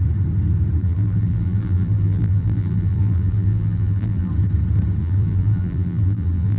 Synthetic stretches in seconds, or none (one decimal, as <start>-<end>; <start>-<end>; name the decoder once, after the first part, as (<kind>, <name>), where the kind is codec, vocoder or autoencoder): 0.8-4.3 (vocoder, BigVGAN v2); 5.0-6.6